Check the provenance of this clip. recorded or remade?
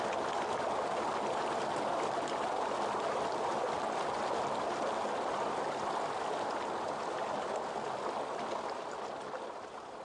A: recorded